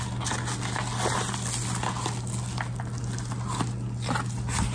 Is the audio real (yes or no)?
yes